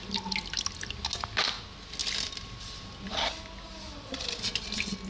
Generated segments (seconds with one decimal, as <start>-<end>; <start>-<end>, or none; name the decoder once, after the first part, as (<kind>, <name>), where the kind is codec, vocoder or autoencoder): none